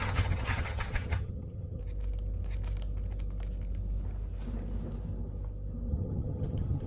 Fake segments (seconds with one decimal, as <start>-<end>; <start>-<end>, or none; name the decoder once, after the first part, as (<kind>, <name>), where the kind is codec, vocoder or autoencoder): 0.0-1.8 (vocoder, HiFi-GAN); 5.9-6.9